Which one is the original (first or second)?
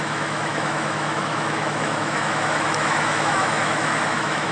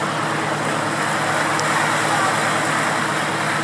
second